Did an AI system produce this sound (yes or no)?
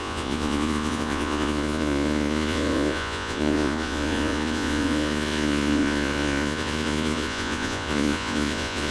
yes